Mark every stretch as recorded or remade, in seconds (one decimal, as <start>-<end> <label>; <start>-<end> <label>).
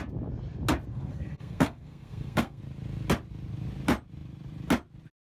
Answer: 0.0-0.9 recorded; 0.9-2.6 remade; 2.6-5.3 recorded